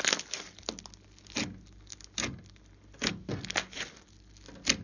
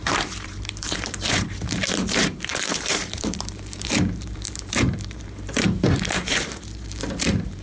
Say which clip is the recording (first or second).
first